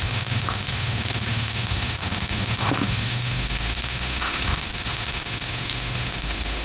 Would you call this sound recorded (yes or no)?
no